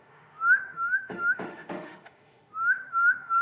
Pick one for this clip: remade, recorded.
remade